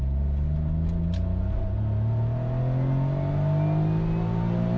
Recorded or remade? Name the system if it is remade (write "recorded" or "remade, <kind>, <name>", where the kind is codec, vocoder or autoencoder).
recorded